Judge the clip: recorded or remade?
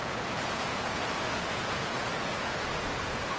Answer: remade